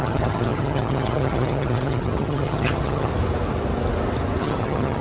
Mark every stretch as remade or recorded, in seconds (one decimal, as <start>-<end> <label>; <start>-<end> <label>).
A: 0.0-3.1 remade; 3.1-4.4 recorded; 4.4-5.0 remade